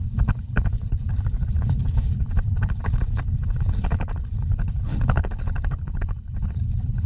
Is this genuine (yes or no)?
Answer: no